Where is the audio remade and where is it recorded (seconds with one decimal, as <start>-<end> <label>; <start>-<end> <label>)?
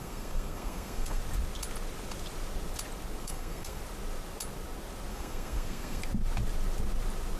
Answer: 0.0-1.2 remade; 1.2-3.2 recorded; 3.2-3.8 remade; 3.8-5.1 recorded; 5.1-6.0 remade; 6.0-7.4 recorded